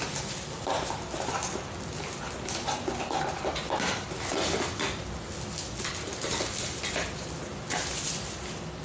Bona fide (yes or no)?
yes